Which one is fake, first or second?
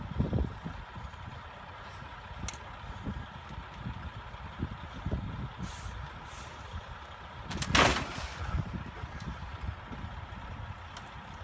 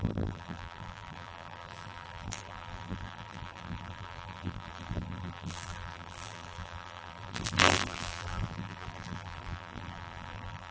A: second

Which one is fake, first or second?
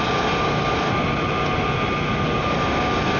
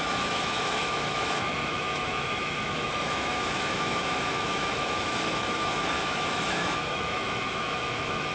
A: second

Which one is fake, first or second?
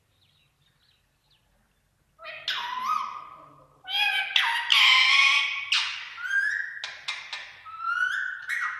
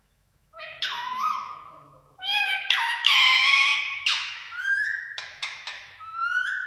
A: second